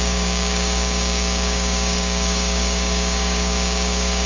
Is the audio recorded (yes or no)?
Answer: no